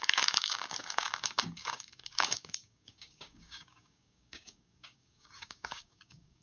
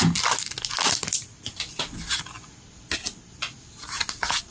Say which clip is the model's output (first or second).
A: first